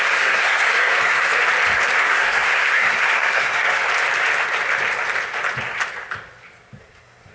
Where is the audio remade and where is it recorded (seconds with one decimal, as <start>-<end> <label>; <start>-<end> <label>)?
0.0-1.3 remade; 1.3-2.0 recorded; 2.0-3.8 remade; 3.8-6.8 recorded; 6.8-7.3 remade